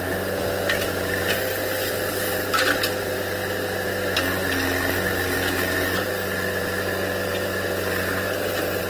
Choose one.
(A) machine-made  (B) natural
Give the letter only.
B